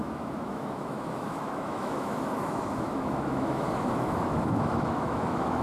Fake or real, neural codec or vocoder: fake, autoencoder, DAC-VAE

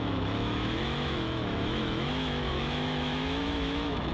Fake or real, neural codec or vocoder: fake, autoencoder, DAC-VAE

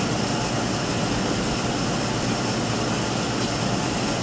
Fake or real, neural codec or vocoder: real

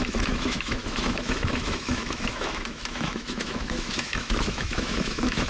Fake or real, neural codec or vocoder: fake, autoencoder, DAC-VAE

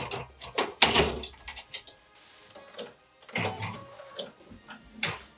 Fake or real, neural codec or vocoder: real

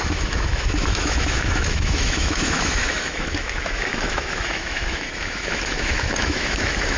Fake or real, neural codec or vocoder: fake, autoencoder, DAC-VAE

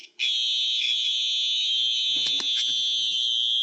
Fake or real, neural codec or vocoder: fake, autoencoder, DAC-VAE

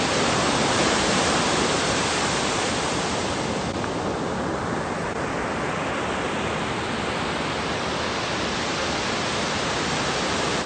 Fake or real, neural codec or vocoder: real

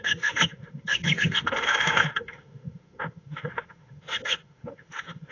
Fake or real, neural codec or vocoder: fake, autoencoder, DAC-VAE